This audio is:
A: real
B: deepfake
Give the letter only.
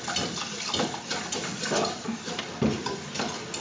A